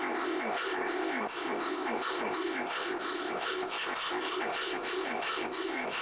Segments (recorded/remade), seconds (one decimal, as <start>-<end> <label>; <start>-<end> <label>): 0.0-6.0 remade